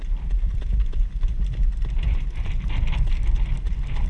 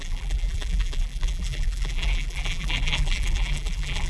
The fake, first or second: second